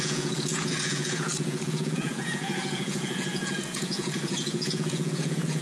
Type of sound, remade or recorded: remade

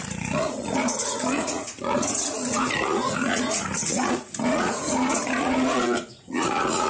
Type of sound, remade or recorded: remade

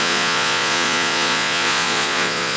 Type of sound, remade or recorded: remade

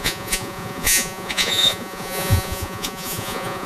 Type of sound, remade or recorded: remade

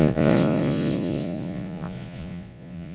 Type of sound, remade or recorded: remade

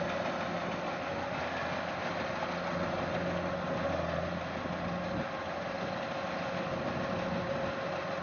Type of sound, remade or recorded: recorded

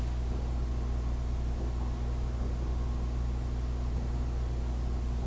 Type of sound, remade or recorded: recorded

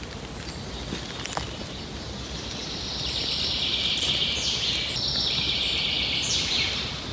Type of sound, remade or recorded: recorded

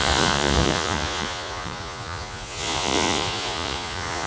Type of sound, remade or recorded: remade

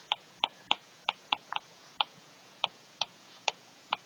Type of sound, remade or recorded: remade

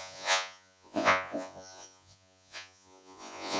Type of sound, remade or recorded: remade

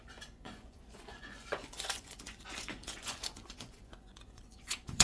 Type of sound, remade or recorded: remade